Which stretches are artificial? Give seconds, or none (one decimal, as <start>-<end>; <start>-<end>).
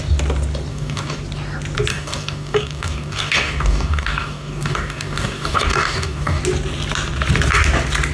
0.7-1.2; 1.9-6.4